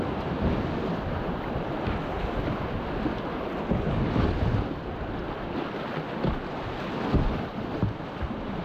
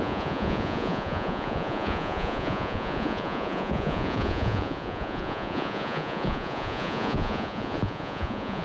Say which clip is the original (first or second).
first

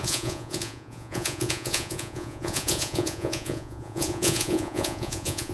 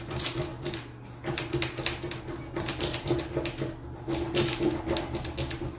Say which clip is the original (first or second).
second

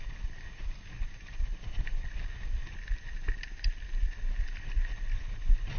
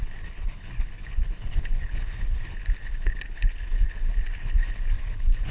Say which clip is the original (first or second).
first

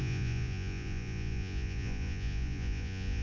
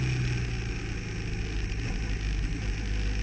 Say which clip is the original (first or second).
second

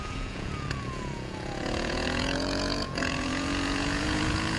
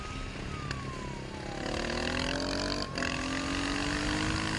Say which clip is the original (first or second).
second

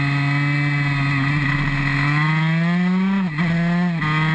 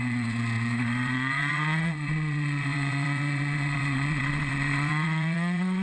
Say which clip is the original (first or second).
first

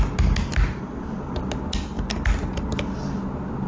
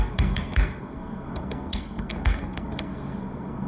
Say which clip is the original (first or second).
first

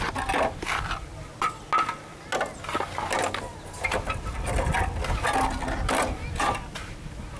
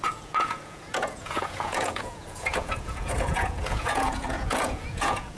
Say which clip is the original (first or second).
first